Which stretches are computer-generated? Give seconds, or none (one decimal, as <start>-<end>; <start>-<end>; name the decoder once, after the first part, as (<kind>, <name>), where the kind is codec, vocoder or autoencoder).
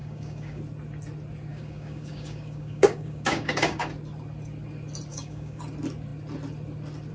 0.0-0.6 (codec, DAC); 1.5-3.9; 5.1-5.6